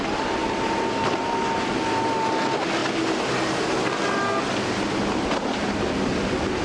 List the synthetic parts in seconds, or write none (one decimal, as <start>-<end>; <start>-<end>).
none

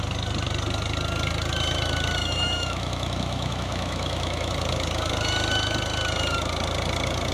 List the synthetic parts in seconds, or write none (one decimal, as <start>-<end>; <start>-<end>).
2.2-4.5

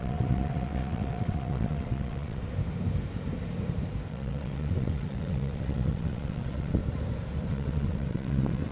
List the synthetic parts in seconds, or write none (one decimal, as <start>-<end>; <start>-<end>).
0.0-2.4; 4.1-6.8; 7.5-8.7

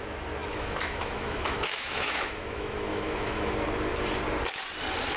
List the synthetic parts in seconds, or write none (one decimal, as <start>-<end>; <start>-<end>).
0.4-3.5

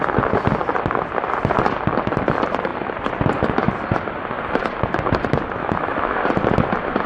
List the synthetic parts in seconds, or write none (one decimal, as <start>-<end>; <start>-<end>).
5.6-6.2

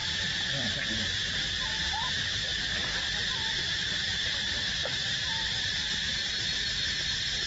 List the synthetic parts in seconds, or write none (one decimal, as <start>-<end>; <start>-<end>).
0.0-1.0; 4.8-6.6